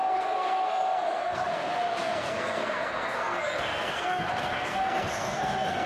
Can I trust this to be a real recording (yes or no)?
no